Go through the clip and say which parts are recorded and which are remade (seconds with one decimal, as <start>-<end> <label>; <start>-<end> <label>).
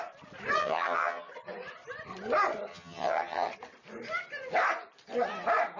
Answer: 0.0-0.6 recorded; 0.6-1.3 remade; 1.3-2.7 recorded; 2.7-3.5 remade; 3.5-5.8 recorded